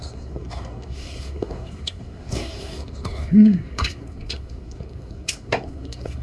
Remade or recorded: remade